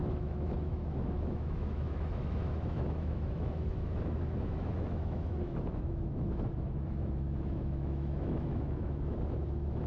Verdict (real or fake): fake